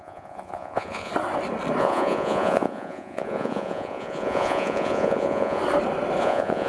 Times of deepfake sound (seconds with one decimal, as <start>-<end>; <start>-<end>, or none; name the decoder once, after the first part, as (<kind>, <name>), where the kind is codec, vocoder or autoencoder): 0.0-1.1 (vocoder, Vocos); 1.8-5.6; 6.2-6.7